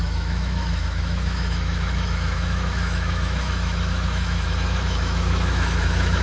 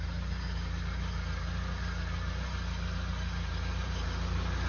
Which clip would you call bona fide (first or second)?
second